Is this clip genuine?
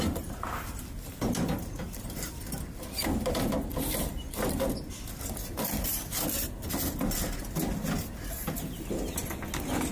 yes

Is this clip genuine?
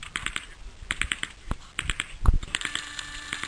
yes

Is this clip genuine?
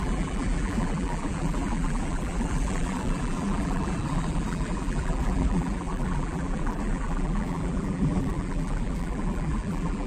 no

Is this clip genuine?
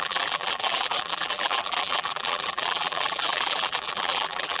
no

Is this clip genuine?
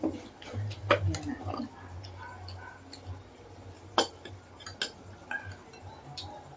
yes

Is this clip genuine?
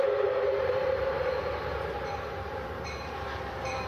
no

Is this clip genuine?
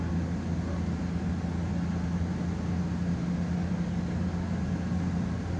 yes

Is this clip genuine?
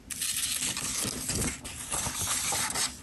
yes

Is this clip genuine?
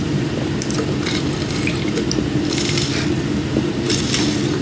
no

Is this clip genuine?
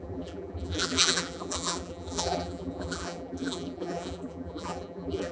no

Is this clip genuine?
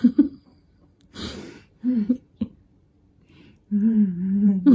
no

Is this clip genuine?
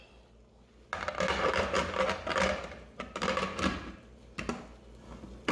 yes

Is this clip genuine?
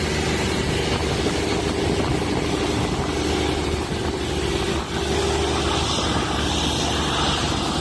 yes